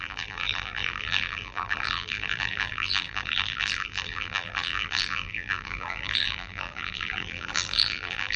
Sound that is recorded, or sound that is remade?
remade